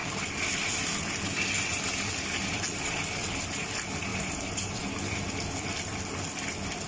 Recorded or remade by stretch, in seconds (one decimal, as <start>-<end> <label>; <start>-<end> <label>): 0.0-0.8 remade; 0.8-6.9 recorded